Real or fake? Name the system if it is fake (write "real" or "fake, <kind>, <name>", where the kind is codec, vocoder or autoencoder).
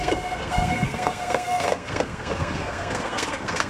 fake, codec, SNAC